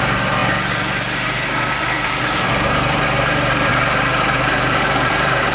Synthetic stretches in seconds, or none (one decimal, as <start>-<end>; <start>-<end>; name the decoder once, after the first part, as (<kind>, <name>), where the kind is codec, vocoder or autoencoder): 0.0-5.5 (vocoder, BigVGAN v2)